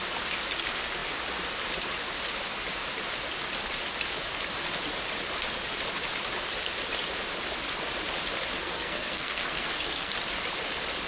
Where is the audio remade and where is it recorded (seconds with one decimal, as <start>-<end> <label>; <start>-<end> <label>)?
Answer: 0.0-8.6 recorded; 8.6-10.1 remade; 10.1-11.1 recorded